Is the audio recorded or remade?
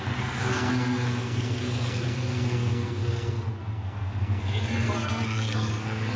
remade